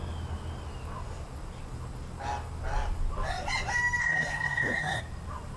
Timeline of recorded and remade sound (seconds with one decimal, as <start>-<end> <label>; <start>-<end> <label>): 0.0-4.0 recorded; 4.0-5.0 remade; 5.0-5.6 recorded

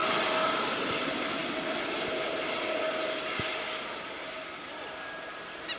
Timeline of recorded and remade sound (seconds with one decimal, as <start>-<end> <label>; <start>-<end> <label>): 0.0-5.8 recorded

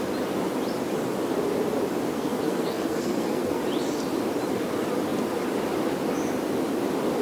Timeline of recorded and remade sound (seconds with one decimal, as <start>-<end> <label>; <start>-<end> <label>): 0.0-2.1 recorded; 2.1-3.6 remade; 3.6-7.2 recorded

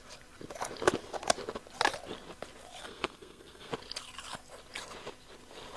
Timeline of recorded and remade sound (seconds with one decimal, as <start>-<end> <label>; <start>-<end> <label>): 0.0-2.8 recorded; 2.8-3.7 remade; 3.7-5.8 recorded

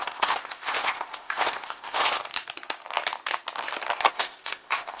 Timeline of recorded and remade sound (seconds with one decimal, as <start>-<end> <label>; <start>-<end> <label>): 0.0-2.2 remade; 2.2-4.1 recorded; 4.1-5.0 remade